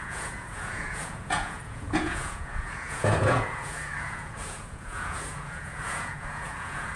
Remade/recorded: remade